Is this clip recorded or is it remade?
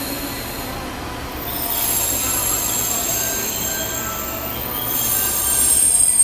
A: recorded